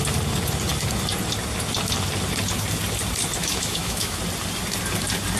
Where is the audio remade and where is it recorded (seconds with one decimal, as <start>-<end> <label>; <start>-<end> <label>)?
0.0-3.4 recorded; 3.4-4.2 remade; 4.2-5.4 recorded